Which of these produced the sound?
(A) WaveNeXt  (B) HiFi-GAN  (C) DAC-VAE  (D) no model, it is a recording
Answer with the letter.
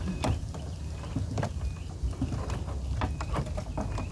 D